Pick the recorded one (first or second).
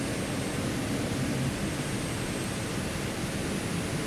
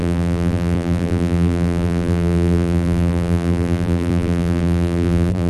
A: first